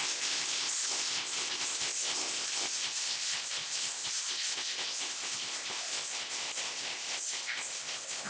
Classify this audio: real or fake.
fake